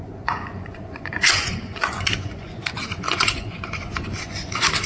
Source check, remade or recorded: remade